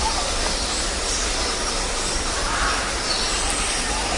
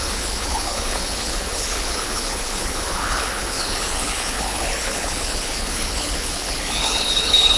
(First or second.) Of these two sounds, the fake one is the second